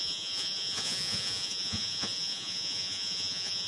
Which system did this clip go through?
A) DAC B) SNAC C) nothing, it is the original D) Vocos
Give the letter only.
D